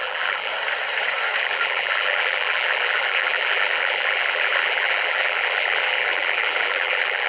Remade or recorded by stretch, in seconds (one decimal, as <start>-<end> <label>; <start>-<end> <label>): 0.0-0.5 remade; 0.5-1.4 recorded; 1.4-7.3 remade